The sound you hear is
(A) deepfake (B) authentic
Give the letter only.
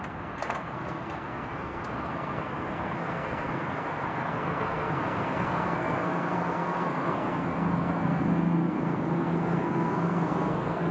A